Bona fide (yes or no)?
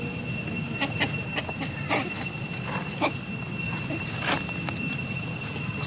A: yes